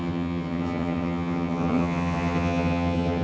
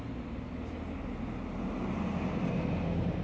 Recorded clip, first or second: second